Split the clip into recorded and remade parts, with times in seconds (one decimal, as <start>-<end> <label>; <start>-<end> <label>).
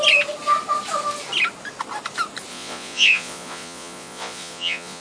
0.0-2.5 recorded; 2.5-5.0 remade